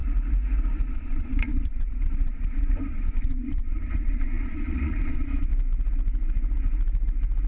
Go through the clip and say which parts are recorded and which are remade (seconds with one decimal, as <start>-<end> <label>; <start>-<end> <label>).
0.0-0.9 recorded; 0.9-5.5 remade; 5.5-7.5 recorded